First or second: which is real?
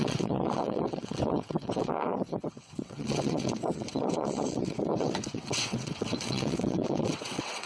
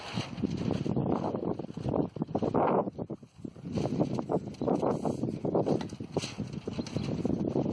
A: second